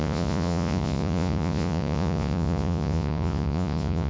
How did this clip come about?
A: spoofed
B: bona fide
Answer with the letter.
A